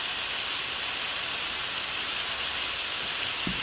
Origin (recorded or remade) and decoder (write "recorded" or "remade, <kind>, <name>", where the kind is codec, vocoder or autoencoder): recorded